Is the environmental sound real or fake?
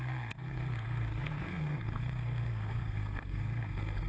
fake